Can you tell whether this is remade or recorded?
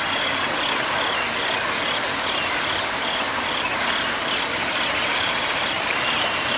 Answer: recorded